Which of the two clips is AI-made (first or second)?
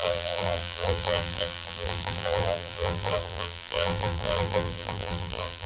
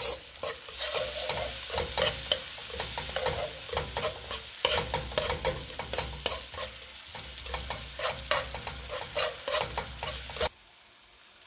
first